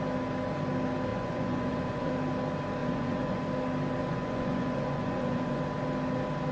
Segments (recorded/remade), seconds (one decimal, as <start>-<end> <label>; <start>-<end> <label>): 0.0-1.1 recorded; 1.1-2.1 remade; 2.1-2.8 recorded; 2.8-3.4 remade; 3.4-4.0 recorded; 4.0-5.6 remade; 5.6-6.5 recorded

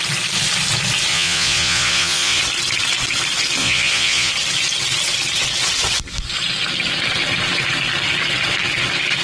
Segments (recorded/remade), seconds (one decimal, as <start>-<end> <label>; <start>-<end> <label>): 0.0-1.1 recorded; 1.1-2.4 remade; 2.4-3.6 recorded; 3.6-4.3 remade; 4.3-9.2 recorded

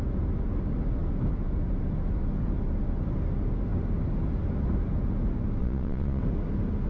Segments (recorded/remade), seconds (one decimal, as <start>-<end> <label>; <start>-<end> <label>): 0.0-5.6 recorded; 5.6-6.2 remade; 6.2-6.9 recorded